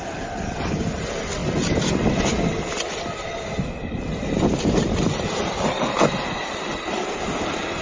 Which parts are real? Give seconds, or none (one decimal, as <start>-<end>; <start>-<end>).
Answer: 0.0-7.8